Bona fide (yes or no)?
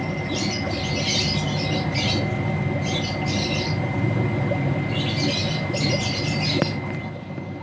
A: yes